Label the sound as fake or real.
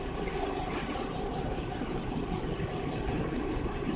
fake